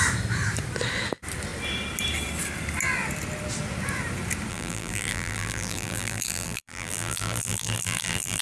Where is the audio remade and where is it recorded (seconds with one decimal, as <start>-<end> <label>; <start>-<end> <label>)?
0.0-4.5 recorded; 4.5-8.4 remade